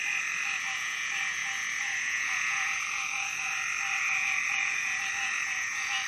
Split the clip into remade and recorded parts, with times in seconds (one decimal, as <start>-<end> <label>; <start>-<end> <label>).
0.0-6.1 remade